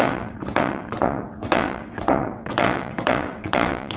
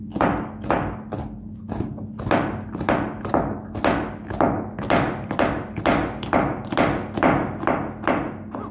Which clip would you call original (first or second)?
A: second